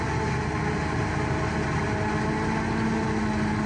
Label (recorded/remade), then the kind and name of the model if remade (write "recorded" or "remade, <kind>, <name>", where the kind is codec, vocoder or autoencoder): recorded